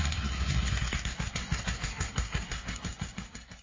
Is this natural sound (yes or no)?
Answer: no